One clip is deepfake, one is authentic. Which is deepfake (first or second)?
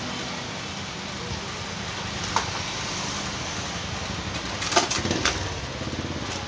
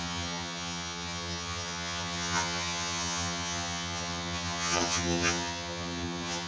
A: second